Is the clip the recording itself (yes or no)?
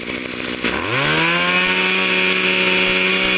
yes